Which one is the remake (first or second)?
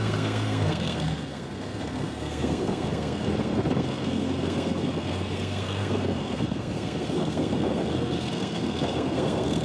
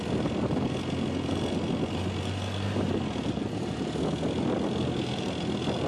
first